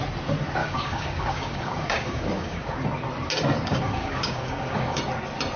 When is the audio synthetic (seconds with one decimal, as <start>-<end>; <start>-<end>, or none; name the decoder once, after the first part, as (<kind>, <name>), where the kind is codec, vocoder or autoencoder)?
0.6-2.7 (codec, DAC); 3.7-5.0

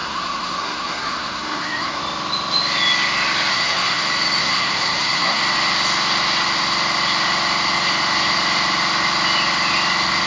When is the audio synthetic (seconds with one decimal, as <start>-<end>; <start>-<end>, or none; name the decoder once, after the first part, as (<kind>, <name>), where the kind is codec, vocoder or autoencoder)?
0.0-2.0 (codec, SNAC); 3.5-4.0; 4.4-5.4

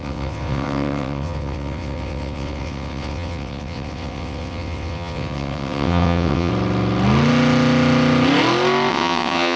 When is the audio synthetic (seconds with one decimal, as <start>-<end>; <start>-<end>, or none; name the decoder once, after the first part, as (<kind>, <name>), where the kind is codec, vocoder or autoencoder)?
0.0-6.5 (vocoder, WaveNeXt); 8.9-9.6